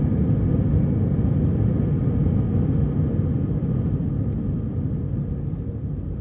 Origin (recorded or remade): recorded